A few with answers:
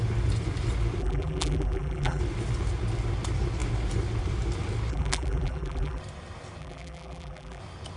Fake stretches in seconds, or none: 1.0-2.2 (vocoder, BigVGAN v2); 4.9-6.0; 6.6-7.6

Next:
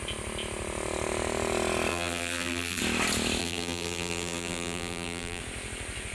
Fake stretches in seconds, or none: 1.9-2.8 (vocoder, BigVGAN v2); 3.4-5.4

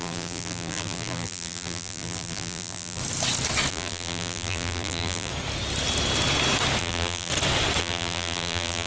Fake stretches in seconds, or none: 0.0-3.0 (vocoder, BigVGAN v2); 3.7-5.3; 6.8-7.3; 7.8-8.9

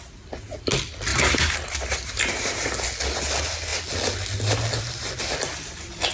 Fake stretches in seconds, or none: 1.1-2.7 (vocoder, BigVGAN v2)

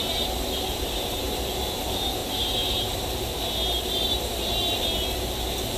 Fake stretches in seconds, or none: 2.2-2.8 (vocoder, BigVGAN v2)

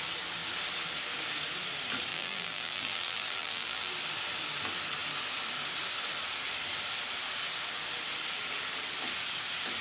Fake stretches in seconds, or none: 2.1-3.9 (vocoder, BigVGAN v2)

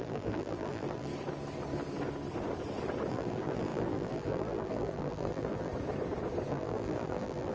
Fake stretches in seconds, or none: 0.0-1.1 (vocoder, BigVGAN v2); 3.1-5.7; 6.5-7.5